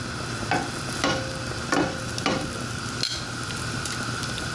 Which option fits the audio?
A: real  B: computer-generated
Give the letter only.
A